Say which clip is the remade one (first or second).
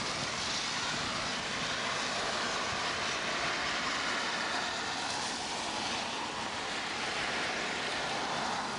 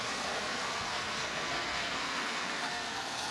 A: second